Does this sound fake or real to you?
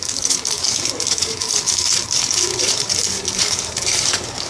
fake